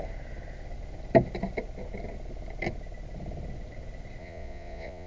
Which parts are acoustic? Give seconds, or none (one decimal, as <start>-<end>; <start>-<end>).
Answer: 0.0-4.2